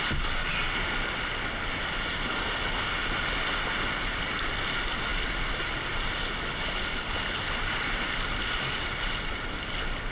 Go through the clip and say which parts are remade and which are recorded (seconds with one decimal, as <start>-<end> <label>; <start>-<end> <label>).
0.0-10.1 recorded